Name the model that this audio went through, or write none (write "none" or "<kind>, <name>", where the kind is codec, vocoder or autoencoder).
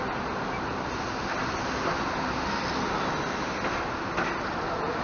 none